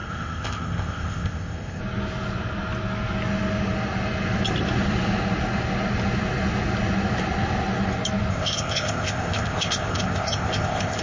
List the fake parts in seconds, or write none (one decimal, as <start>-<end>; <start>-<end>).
0.0-1.8; 8.3-11.0